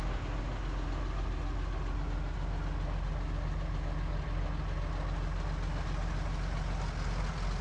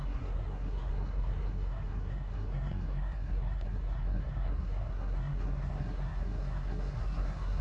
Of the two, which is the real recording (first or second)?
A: first